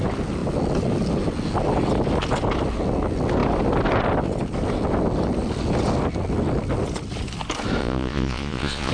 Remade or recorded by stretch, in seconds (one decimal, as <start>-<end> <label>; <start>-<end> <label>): 0.0-7.8 recorded; 7.8-8.9 remade